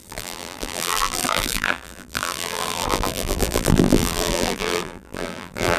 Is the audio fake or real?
fake